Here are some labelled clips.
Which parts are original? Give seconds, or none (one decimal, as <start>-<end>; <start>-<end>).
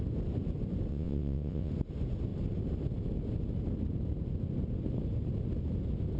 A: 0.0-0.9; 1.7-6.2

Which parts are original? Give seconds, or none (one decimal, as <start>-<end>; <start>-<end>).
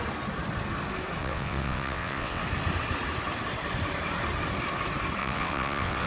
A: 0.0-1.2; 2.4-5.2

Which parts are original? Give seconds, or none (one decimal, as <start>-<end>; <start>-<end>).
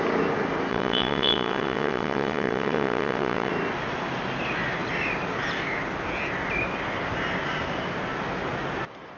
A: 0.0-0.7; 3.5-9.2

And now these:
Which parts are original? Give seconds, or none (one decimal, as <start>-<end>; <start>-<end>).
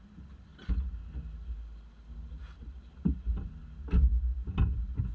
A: 0.0-5.1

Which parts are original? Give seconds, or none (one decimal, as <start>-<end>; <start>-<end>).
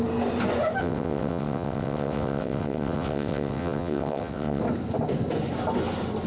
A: 0.0-0.8; 4.6-6.3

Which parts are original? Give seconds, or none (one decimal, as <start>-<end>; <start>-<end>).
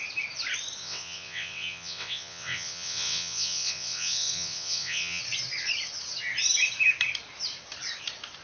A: 0.0-0.8; 5.2-8.4